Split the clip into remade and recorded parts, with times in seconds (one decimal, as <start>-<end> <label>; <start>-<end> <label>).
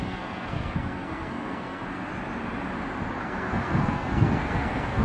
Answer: 0.0-2.1 remade; 2.1-3.2 recorded; 3.2-5.0 remade